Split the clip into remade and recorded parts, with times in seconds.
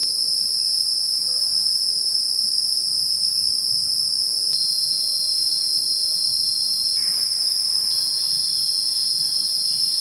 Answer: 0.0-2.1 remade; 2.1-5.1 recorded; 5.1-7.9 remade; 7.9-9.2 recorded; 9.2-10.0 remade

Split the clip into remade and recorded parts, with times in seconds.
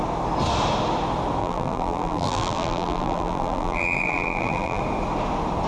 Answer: 0.0-1.4 recorded; 1.4-4.8 remade; 4.8-5.7 recorded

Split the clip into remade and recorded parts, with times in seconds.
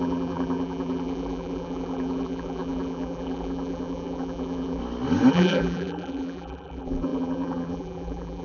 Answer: 0.0-4.8 remade; 4.8-5.3 recorded; 5.3-8.4 remade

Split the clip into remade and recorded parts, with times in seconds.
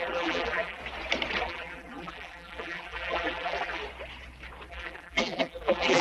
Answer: 0.0-0.8 remade; 0.8-1.4 recorded; 1.4-3.8 remade; 3.8-4.7 recorded; 4.7-6.0 remade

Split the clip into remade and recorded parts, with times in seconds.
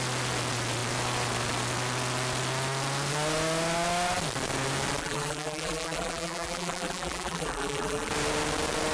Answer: 0.0-5.0 recorded; 5.0-8.1 remade; 8.1-8.9 recorded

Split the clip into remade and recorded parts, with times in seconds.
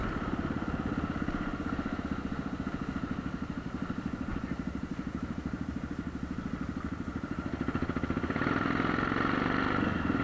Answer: 0.0-2.0 remade; 2.0-4.3 recorded; 4.3-8.5 remade; 8.5-10.2 recorded